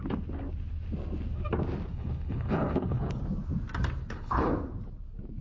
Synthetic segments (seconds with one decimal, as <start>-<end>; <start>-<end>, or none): 1.9-3.2; 4.0-4.5